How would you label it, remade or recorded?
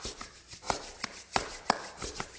recorded